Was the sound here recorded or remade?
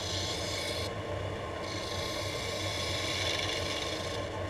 recorded